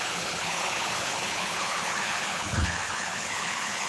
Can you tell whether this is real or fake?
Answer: fake